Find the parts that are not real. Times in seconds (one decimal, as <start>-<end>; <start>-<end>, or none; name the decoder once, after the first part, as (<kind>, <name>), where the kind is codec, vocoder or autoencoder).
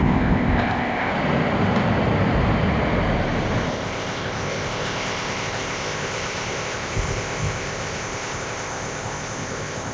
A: 0.0-1.1 (codec, ZipCodec); 3.7-9.9